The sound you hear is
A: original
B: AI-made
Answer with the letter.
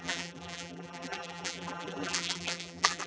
B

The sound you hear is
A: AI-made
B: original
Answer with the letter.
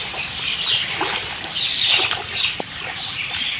B